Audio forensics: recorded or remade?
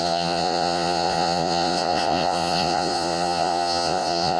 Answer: remade